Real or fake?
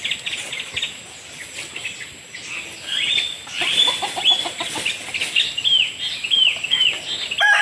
real